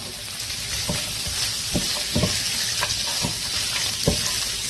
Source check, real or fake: real